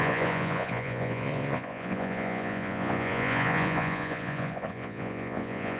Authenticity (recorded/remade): remade